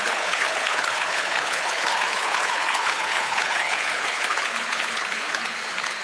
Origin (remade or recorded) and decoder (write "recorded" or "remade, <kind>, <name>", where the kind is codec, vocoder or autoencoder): remade, codec, HILCodec